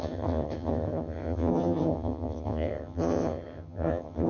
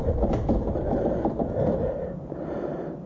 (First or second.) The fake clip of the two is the first